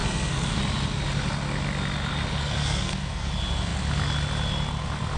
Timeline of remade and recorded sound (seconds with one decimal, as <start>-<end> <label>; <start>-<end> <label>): 0.0-0.6 remade; 0.6-2.4 recorded; 2.4-3.3 remade; 3.3-5.2 recorded